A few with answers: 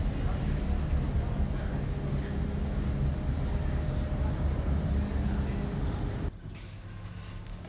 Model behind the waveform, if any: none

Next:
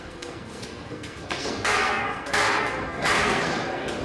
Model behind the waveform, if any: codec, SNAC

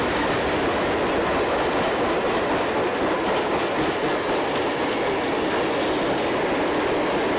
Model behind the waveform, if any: none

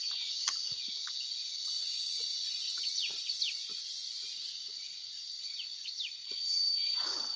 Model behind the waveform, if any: none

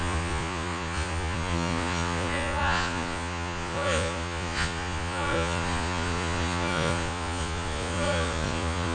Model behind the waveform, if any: vocoder, Vocos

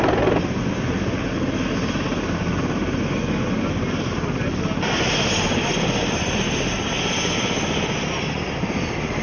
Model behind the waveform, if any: none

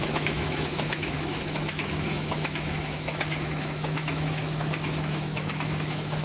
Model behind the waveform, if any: autoencoder, DAC-VAE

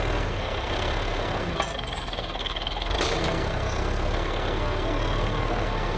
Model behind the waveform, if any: codec, SNAC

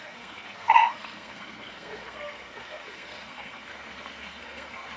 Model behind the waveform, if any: codec, SNAC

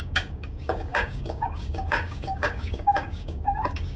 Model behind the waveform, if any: codec, DAC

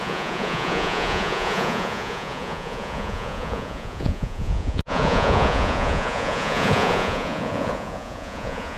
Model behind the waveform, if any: vocoder, Vocos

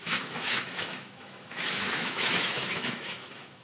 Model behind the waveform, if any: autoencoder, DAC-VAE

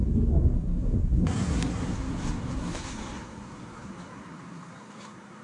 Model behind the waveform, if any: codec, SNAC